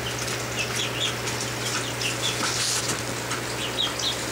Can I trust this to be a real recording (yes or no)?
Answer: yes